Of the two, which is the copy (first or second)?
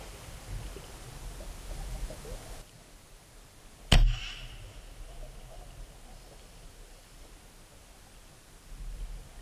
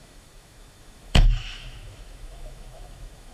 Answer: second